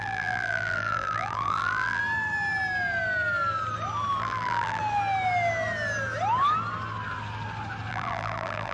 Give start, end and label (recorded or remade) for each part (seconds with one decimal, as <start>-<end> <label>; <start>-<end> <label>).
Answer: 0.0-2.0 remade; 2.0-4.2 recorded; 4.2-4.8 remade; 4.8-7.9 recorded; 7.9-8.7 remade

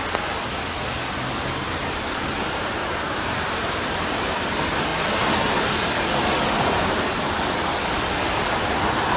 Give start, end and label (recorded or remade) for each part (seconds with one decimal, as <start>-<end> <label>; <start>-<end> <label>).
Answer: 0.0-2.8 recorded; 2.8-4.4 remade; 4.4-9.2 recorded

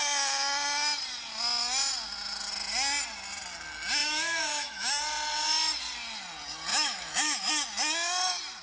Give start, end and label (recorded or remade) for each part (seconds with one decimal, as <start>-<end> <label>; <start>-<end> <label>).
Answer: 0.0-4.0 recorded; 4.0-5.0 remade; 5.0-6.7 recorded; 6.7-7.5 remade; 7.5-8.6 recorded

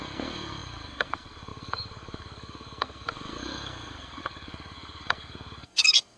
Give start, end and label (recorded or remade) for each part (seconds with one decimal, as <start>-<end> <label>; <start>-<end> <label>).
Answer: 0.0-6.2 remade